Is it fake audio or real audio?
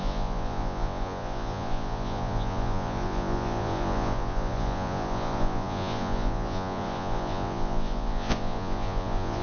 fake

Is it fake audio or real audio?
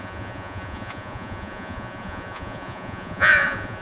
fake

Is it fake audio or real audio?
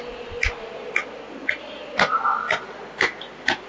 real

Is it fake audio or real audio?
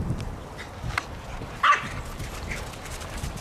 real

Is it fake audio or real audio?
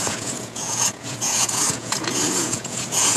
fake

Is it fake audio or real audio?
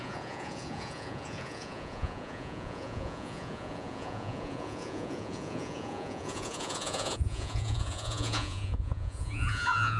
fake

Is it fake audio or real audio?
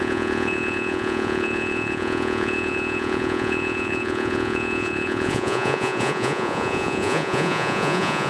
fake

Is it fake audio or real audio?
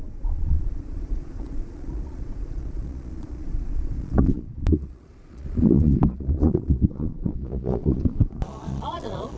fake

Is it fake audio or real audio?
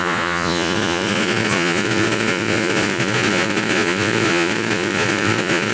fake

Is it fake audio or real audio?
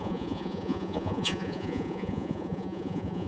fake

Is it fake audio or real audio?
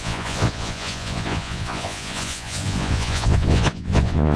fake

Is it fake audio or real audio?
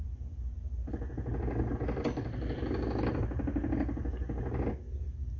real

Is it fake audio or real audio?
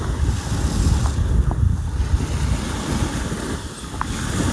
real